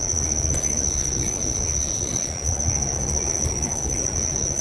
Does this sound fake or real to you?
fake